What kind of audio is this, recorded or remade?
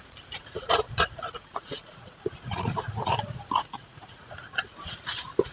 remade